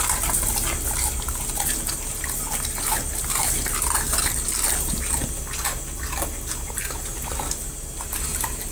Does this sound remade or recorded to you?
recorded